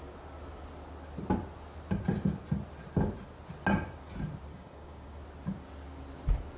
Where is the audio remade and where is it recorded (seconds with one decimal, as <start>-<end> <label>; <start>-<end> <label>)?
0.0-4.5 recorded; 4.5-5.2 remade; 5.2-6.6 recorded